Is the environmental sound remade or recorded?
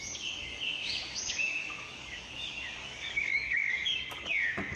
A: remade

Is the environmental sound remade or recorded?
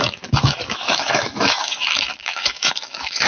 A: remade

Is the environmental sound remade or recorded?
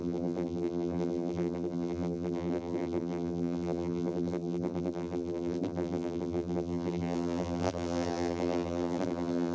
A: remade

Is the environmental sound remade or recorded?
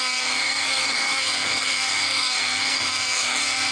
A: remade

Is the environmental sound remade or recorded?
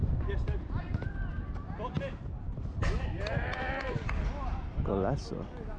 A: recorded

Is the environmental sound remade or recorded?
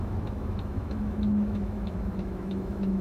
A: remade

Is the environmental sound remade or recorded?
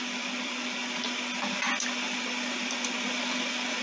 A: recorded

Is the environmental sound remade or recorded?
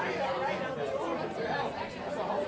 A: recorded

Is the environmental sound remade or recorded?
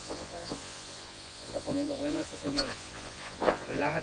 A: remade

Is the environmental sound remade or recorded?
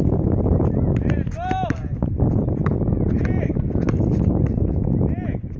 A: recorded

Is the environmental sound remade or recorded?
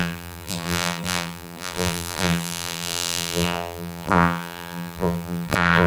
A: remade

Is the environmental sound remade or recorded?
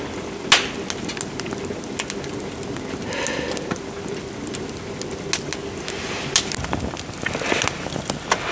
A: recorded